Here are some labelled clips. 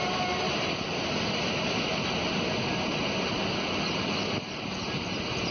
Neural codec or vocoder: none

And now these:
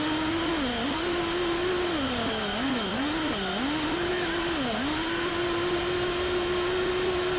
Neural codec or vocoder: none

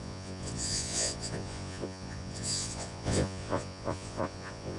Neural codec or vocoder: vocoder, Vocos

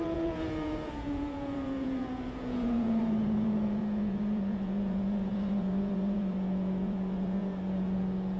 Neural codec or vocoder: vocoder, Vocos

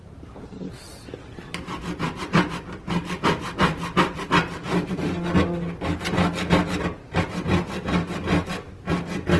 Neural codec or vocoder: none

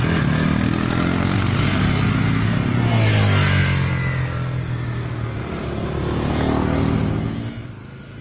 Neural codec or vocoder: none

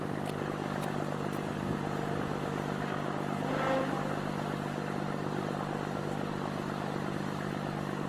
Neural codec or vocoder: none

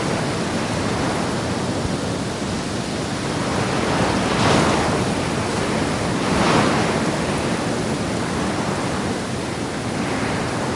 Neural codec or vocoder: none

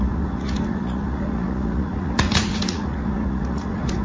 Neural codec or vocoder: vocoder, Vocos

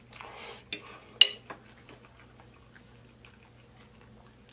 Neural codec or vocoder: none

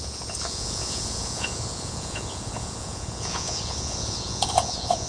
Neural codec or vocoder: vocoder, Vocos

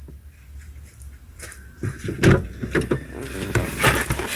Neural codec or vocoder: none